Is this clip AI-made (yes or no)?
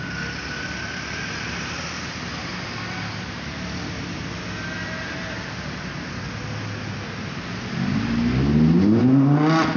no